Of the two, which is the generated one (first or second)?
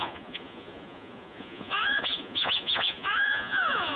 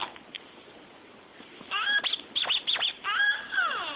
first